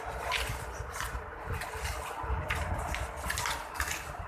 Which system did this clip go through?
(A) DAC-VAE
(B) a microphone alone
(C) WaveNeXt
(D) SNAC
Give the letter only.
B